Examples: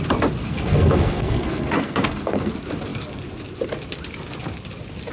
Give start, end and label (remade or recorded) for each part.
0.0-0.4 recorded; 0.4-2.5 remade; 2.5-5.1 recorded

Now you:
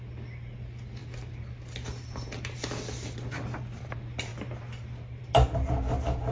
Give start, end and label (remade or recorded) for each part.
0.0-6.3 recorded

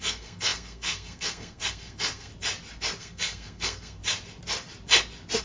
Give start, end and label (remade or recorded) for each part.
0.0-2.3 remade; 2.3-3.0 recorded; 3.0-4.0 remade; 4.0-5.4 recorded

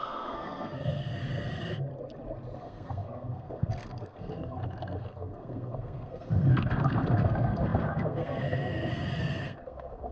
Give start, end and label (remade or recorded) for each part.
0.0-1.9 remade; 1.9-2.6 recorded; 2.6-10.1 remade

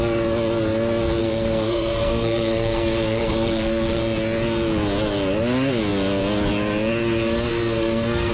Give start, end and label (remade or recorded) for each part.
0.0-1.2 recorded; 1.2-4.0 remade; 4.0-7.5 recorded; 7.5-8.3 remade

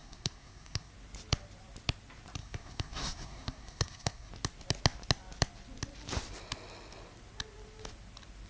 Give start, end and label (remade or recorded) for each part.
0.0-0.9 remade; 0.9-2.4 recorded; 2.4-4.3 remade; 4.3-8.5 recorded

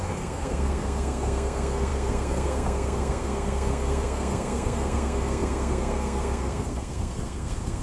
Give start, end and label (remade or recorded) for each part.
0.0-7.8 remade